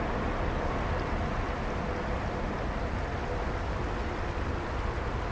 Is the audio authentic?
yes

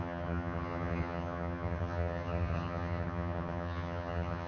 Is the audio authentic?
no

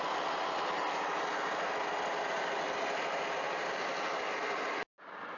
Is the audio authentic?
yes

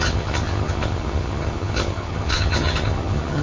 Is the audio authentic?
no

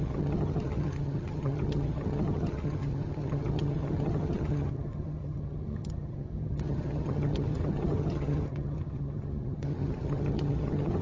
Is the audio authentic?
no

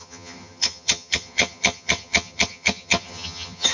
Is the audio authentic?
no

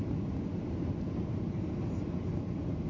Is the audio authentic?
yes